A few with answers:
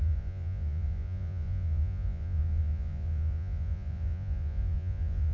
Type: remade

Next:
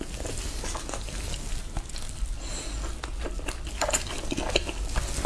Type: recorded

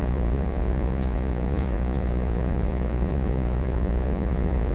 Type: remade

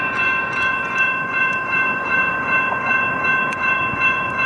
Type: remade